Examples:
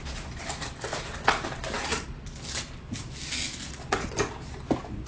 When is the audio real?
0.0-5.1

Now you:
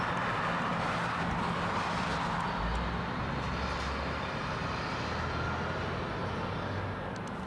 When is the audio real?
0.0-7.5

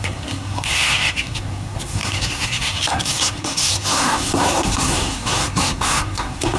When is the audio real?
none

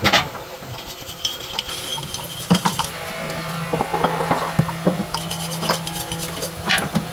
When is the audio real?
0.0-7.1

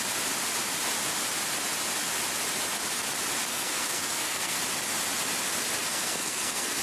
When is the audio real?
0.0-3.5; 4.6-5.8

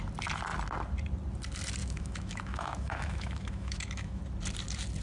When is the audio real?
0.0-1.8; 4.2-5.0